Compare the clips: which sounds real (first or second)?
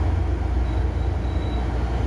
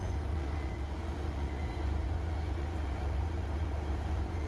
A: first